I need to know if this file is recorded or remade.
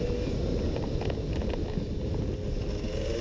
recorded